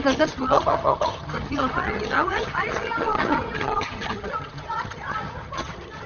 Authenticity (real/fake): fake